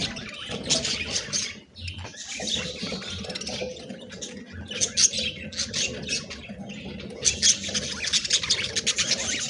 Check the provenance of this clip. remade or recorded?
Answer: recorded